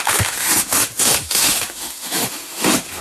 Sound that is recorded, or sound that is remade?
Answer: remade